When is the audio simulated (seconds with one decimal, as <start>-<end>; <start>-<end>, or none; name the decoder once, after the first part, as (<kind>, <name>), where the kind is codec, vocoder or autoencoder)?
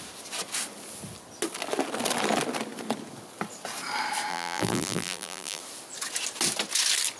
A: 4.3-5.6 (vocoder, BigVGAN v2)